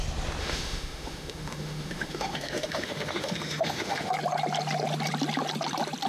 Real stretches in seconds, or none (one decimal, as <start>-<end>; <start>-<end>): 0.0-0.4; 4.1-6.1